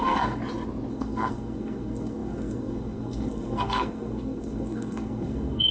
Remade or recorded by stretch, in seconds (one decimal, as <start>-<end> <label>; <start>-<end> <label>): 0.0-0.4 remade; 0.4-0.9 recorded; 0.9-5.7 remade